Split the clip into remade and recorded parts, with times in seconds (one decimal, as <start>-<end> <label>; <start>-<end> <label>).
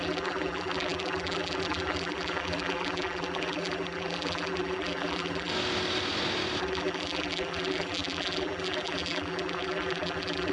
0.0-5.5 remade; 5.5-6.6 recorded; 6.6-10.5 remade